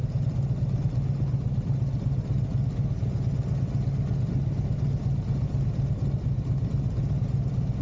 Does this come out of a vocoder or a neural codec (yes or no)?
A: no